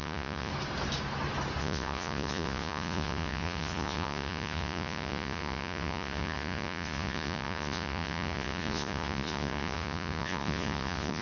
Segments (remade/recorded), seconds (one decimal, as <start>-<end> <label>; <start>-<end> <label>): 0.0-0.5 remade; 0.5-1.6 recorded; 1.6-11.2 remade